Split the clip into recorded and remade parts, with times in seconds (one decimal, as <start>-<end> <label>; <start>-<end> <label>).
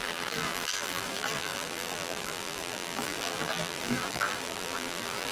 0.0-5.3 remade